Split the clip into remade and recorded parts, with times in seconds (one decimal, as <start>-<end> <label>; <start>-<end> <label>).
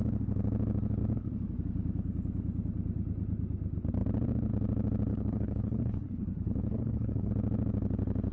0.0-5.1 recorded; 5.1-7.3 remade; 7.3-8.3 recorded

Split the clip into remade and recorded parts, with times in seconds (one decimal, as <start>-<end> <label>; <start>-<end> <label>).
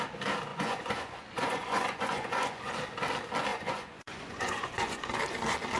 0.0-0.5 recorded; 0.5-2.7 remade; 2.7-3.5 recorded; 3.5-5.2 remade; 5.2-5.8 recorded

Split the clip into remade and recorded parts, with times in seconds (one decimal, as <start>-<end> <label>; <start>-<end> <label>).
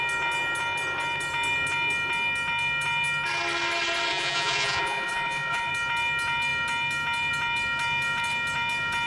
0.0-4.1 recorded; 4.1-5.7 remade; 5.7-9.1 recorded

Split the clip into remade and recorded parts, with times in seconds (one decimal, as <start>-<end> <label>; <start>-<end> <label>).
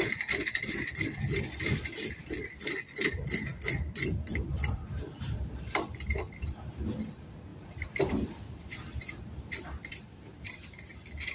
0.0-3.5 remade; 3.5-4.5 recorded; 4.5-11.3 remade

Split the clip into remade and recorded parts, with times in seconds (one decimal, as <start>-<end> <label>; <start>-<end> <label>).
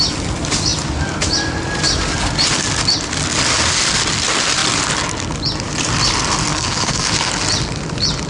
0.0-6.5 recorded; 6.5-7.1 remade; 7.1-8.3 recorded